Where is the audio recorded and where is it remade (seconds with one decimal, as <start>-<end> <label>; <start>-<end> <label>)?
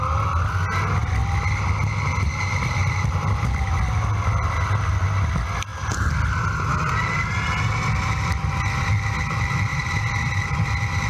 0.0-2.8 recorded; 2.8-3.8 remade; 3.8-9.7 recorded; 9.7-10.4 remade; 10.4-11.1 recorded